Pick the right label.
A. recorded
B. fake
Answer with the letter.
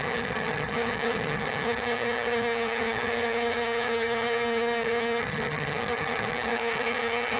B